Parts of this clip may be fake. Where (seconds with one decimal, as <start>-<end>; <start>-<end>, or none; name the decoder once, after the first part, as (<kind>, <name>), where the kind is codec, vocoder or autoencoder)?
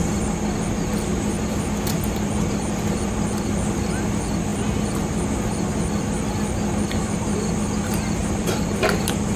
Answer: 1.1-1.6 (vocoder, BigVGAN v2); 8.2-9.0